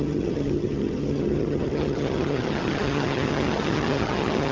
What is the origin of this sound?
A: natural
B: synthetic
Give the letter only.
B